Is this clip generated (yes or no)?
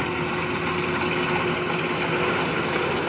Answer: no